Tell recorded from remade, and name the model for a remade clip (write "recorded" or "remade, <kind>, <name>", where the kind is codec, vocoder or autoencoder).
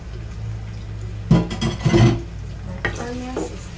recorded